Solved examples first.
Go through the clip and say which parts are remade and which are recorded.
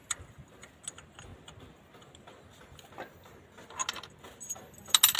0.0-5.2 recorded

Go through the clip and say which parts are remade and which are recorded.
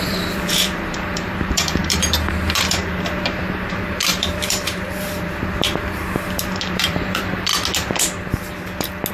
0.0-7.5 remade; 7.5-9.1 recorded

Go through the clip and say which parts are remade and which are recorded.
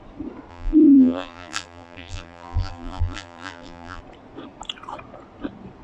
0.0-0.5 recorded; 0.5-4.0 remade; 4.0-5.8 recorded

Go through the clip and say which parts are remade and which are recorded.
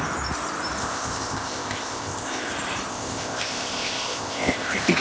0.0-0.8 recorded; 0.8-2.5 remade; 2.5-2.9 recorded; 2.9-5.0 remade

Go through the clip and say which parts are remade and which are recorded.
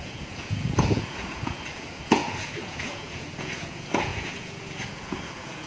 0.0-5.7 remade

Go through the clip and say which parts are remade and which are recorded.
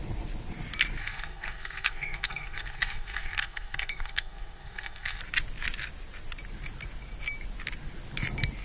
0.0-1.0 recorded; 1.0-5.2 remade; 5.2-8.6 recorded